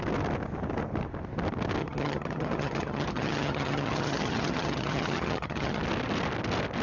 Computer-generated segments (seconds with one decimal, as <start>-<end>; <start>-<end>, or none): 1.8-5.8